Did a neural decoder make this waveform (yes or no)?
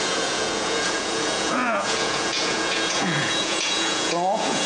yes